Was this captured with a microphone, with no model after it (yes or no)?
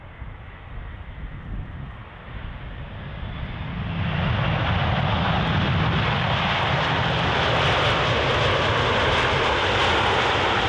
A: yes